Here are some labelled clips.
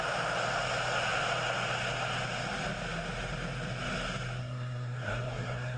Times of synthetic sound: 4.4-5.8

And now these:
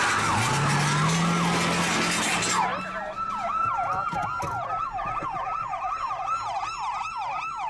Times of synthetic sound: none

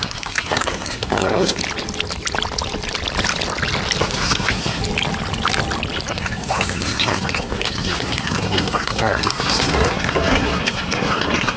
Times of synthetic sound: 0.0-1.6; 4.0-4.8; 6.1-11.6

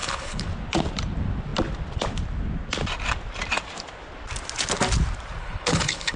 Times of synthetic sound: 0.0-0.5; 5.4-6.2

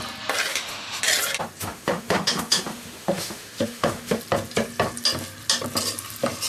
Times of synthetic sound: 0.5-1.0; 1.6-4.2

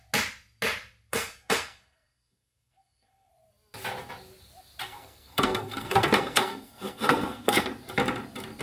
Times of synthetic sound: 1.1-3.3; 4.8-7.7

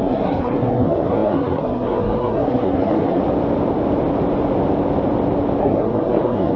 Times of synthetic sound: 0.0-3.2; 5.6-6.6